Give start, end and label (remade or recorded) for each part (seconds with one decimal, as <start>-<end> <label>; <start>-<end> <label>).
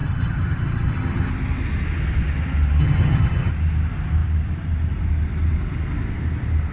0.0-1.3 remade; 1.3-2.8 recorded; 2.8-3.5 remade; 3.5-6.7 recorded